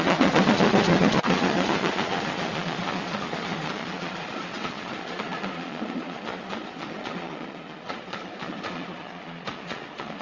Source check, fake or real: fake